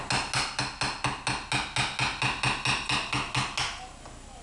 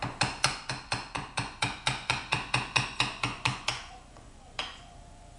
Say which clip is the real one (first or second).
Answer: first